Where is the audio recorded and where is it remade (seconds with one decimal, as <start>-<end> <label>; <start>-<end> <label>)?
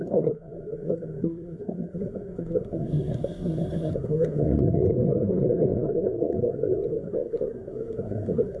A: 0.0-8.6 remade